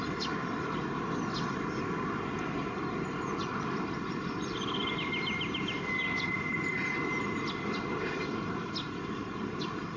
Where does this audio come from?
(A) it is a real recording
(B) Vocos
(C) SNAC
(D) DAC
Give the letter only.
A